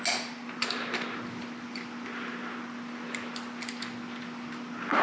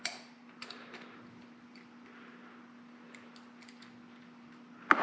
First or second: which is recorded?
first